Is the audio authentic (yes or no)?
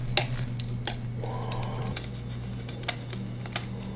yes